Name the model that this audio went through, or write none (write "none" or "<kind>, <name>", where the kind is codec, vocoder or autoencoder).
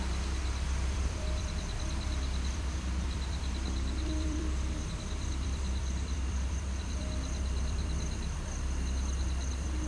vocoder, BigVGAN v2